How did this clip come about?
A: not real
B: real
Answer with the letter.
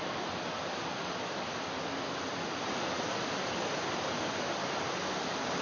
B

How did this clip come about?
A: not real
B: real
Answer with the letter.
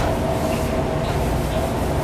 B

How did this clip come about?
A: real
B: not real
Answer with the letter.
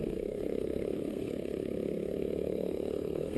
B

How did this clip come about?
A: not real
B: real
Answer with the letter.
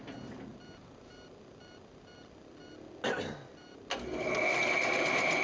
B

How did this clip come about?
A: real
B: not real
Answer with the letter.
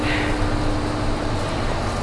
A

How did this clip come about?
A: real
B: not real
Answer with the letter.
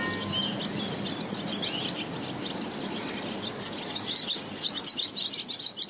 A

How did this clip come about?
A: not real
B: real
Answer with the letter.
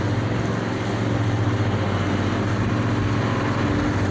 B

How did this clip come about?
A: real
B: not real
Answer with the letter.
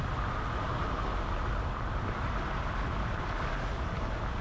A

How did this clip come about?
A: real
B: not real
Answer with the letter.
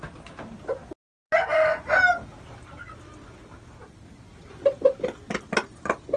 A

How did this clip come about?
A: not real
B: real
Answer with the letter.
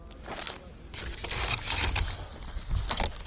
B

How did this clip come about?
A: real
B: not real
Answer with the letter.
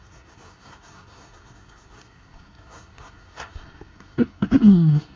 B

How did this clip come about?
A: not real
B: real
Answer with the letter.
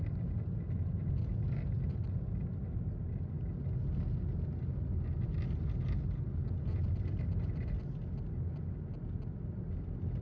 B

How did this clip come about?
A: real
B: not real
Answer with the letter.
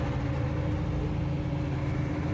A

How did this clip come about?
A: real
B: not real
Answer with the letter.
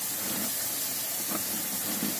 A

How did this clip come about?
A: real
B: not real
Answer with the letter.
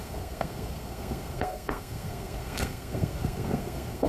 B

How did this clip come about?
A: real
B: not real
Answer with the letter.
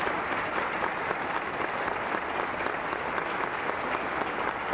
A